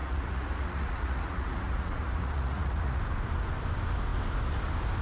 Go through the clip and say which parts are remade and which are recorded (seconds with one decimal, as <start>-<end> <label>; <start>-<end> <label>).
0.0-3.0 remade; 3.0-5.0 recorded